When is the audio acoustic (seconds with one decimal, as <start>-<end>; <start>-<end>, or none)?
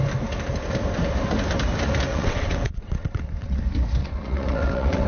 0.0-2.1; 3.6-4.0